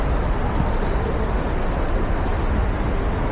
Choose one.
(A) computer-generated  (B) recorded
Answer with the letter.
B